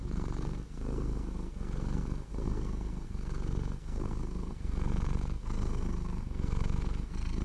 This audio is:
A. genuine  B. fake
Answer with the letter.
B